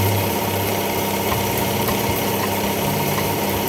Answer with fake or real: fake